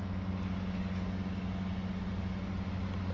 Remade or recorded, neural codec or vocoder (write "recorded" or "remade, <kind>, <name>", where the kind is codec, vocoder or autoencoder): recorded